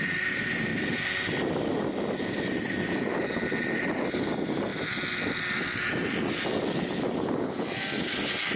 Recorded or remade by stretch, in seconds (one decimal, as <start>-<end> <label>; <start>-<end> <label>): 0.0-8.6 recorded